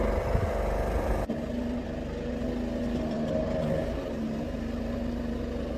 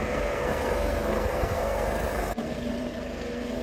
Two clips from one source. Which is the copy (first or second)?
second